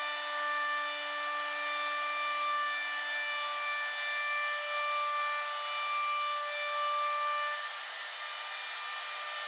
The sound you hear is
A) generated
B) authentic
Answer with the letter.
B